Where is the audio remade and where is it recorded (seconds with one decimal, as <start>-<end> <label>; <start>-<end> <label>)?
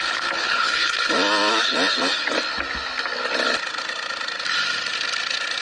0.0-0.4 recorded; 0.4-1.1 remade; 1.1-5.6 recorded